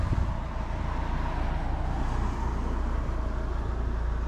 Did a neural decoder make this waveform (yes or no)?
no